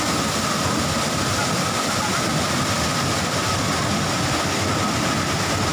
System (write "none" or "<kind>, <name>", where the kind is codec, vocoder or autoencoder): none